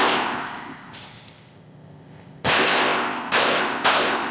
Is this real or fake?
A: fake